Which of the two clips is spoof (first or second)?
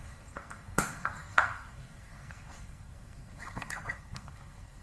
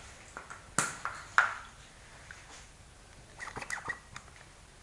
first